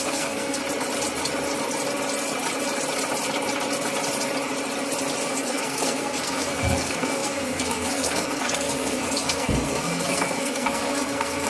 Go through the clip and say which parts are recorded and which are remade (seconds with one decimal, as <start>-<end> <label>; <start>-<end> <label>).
0.0-0.6 remade; 0.6-5.3 recorded; 5.3-11.5 remade